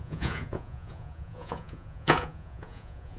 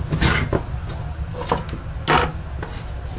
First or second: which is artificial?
first